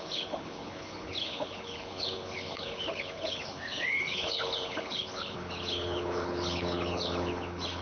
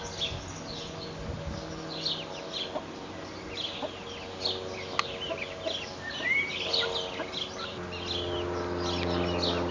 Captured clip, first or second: second